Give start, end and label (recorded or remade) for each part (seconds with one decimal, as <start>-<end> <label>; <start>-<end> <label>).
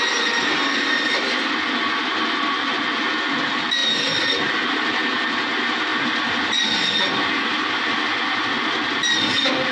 0.0-9.7 recorded